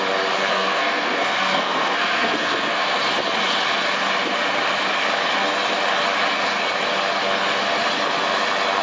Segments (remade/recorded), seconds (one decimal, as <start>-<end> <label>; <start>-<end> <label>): 0.0-0.5 recorded; 0.5-3.0 remade; 3.0-8.8 recorded